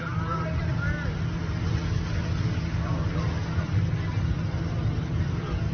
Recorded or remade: recorded